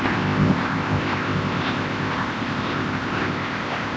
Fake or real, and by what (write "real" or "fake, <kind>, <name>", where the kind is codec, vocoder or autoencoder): fake, codec, ZipCodec